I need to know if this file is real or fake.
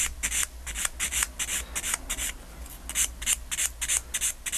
real